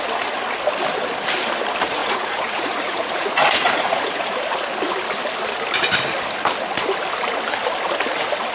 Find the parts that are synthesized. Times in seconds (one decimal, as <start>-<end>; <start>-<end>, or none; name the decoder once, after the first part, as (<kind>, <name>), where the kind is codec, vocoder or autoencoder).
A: 2.0-4.4 (vocoder, Vocos)